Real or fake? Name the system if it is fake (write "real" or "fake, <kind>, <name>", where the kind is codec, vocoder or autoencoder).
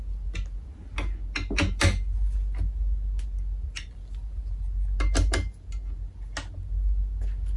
real